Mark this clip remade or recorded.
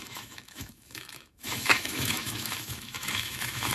remade